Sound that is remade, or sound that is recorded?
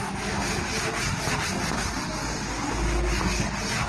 recorded